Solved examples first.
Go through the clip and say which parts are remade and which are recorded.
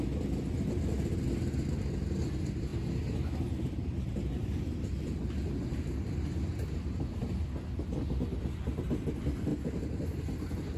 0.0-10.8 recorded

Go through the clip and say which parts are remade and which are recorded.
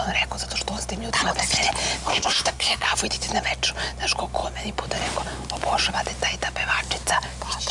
0.0-2.1 recorded; 2.1-2.9 remade; 2.9-7.7 recorded